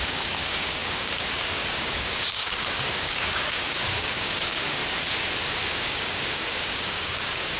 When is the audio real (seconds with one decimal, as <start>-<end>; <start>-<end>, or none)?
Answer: 4.8-5.8